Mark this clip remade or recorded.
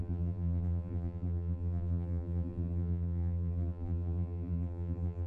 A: remade